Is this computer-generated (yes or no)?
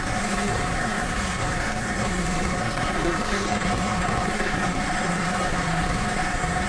yes